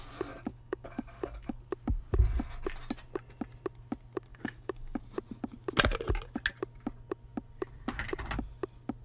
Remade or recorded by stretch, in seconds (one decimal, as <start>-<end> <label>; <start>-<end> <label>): 0.0-0.5 recorded; 0.5-1.6 remade; 1.6-4.3 recorded; 4.3-5.0 remade; 5.0-9.0 recorded